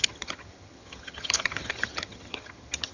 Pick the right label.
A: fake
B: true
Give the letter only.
A